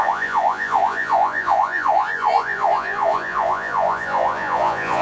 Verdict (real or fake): fake